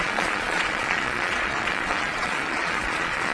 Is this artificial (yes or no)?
yes